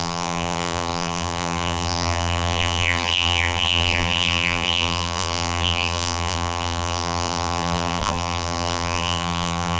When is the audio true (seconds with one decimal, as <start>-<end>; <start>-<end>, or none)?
none

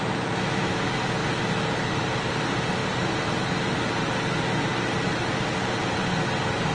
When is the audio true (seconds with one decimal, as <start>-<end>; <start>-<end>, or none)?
0.0-2.8; 3.5-6.7

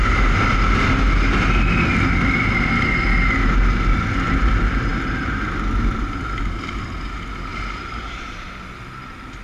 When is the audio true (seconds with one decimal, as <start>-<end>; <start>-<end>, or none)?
0.0-7.5; 8.5-9.4

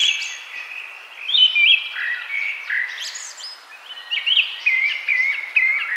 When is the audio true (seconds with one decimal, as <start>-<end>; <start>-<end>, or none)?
0.0-6.0

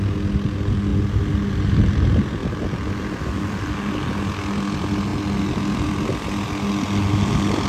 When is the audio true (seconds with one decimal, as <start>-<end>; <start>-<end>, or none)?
0.0-7.7

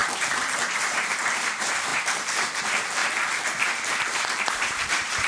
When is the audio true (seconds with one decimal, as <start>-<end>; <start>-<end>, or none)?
0.0-0.9; 3.0-4.0

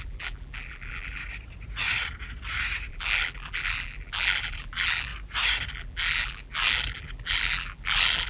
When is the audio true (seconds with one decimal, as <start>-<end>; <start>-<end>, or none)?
1.2-2.9; 5.1-5.7

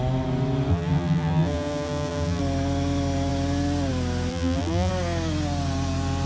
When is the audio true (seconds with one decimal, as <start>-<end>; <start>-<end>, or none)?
0.0-0.7; 2.4-4.3; 4.9-6.3